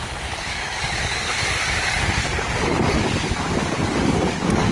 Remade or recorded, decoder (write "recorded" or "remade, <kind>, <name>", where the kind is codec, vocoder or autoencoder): remade, codec, DAC